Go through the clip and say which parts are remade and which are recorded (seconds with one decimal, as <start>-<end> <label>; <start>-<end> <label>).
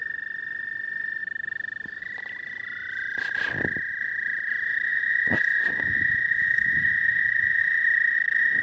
0.0-4.9 recorded; 4.9-7.6 remade; 7.6-8.6 recorded